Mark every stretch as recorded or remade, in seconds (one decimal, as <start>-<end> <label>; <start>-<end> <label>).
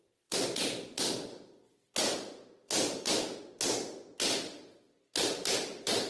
0.0-2.6 recorded; 2.6-3.4 remade; 3.4-6.1 recorded